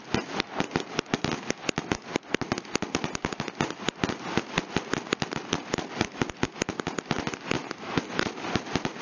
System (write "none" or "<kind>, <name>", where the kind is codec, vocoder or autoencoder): none